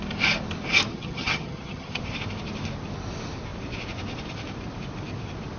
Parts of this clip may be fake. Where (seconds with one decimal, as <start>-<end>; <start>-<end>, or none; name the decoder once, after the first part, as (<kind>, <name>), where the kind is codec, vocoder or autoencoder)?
0.9-2.0 (vocoder, HiFi-GAN)